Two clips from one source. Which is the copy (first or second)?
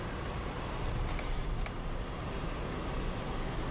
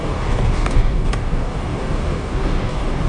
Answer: second